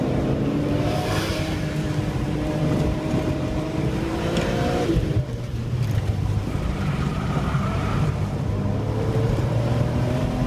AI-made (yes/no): yes